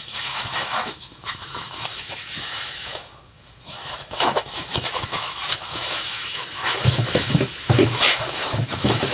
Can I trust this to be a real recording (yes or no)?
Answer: no